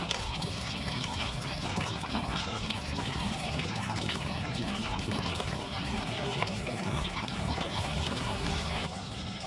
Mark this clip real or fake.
fake